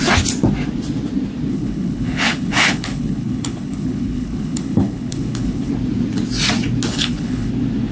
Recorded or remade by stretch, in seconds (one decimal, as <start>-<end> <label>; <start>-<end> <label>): 0.0-1.5 recorded; 1.5-5.7 remade; 5.7-6.9 recorded; 6.9-7.5 remade; 7.5-7.9 recorded